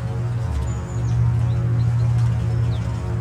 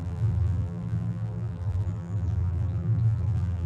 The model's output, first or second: second